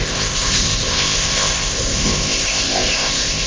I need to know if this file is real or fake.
fake